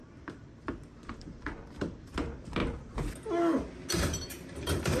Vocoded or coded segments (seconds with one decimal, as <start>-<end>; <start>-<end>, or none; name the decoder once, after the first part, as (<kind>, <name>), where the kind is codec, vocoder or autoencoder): 0.0-2.6 (vocoder, BigVGAN v2); 3.9-5.0